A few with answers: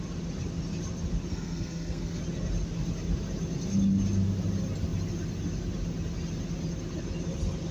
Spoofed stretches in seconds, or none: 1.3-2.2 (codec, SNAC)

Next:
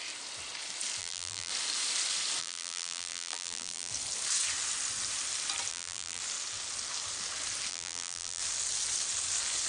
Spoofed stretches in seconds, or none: 1.0-1.5 (vocoder, BigVGAN v2); 2.4-3.9; 5.7-6.2; 7.7-8.4

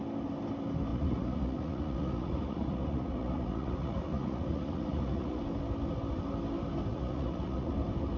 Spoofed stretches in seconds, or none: 0.9-5.4 (vocoder, Vocos); 6.9-7.7